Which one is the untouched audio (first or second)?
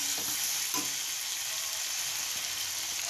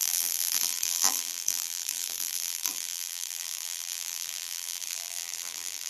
first